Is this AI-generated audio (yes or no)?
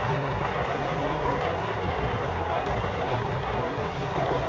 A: yes